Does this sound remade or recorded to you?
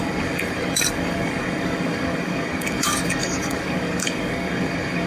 remade